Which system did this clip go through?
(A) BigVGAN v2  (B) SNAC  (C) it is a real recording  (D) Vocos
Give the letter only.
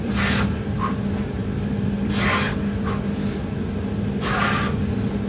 C